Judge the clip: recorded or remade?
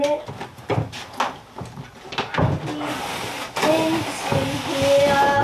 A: recorded